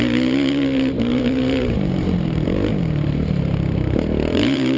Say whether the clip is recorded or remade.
remade